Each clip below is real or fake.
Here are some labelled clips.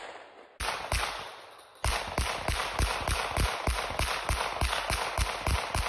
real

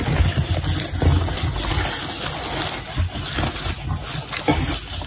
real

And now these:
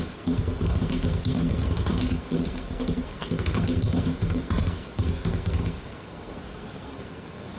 fake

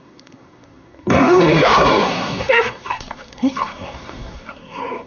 fake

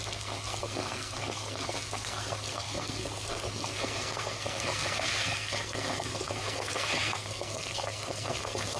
fake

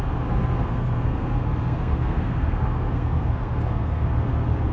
fake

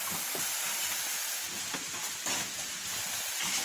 real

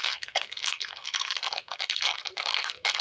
fake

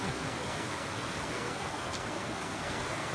fake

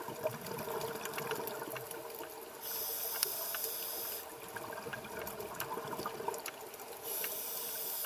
real